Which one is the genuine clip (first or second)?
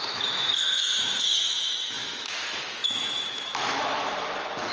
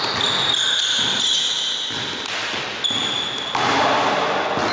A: second